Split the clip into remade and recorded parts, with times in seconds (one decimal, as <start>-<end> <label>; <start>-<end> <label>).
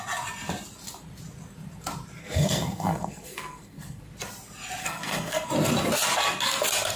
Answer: 0.0-2.2 recorded; 2.2-4.0 remade; 4.0-4.8 recorded; 4.8-5.5 remade; 5.5-7.0 recorded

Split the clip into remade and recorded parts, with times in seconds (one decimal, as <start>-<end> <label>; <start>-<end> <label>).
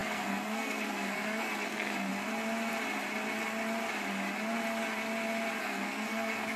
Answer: 0.0-2.1 remade; 2.1-5.6 recorded; 5.6-6.6 remade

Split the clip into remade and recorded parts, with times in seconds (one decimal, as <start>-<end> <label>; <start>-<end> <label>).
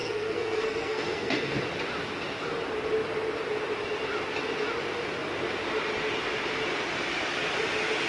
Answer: 0.0-1.6 remade; 1.6-8.1 recorded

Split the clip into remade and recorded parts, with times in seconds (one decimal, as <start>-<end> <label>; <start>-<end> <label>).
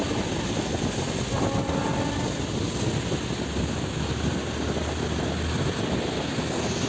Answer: 0.0-6.9 recorded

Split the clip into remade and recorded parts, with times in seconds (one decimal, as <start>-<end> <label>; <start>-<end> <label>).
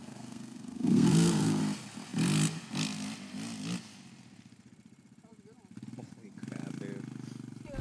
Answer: 0.0-1.6 remade; 1.6-7.8 recorded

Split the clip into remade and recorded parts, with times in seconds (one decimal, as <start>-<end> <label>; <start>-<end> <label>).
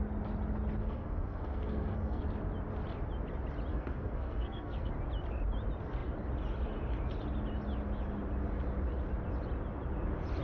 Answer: 0.0-0.8 recorded; 0.8-2.2 remade; 2.2-3.7 recorded; 3.7-4.9 remade; 4.9-10.4 recorded